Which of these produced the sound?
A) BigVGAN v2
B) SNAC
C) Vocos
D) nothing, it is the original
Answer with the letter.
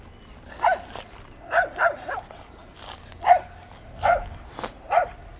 D